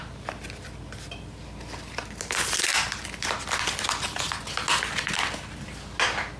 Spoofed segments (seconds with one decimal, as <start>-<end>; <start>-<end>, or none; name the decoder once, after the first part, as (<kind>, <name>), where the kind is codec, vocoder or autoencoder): none